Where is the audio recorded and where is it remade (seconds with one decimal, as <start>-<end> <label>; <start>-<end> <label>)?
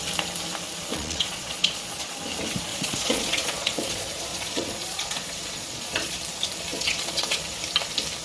0.0-0.9 recorded; 0.9-2.1 remade; 2.1-2.7 recorded; 2.7-6.2 remade; 6.2-6.7 recorded; 6.7-7.4 remade; 7.4-8.2 recorded